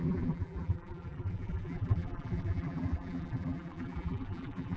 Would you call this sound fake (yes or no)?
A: yes